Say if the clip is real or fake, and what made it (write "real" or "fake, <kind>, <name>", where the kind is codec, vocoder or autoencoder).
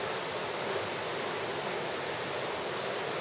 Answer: real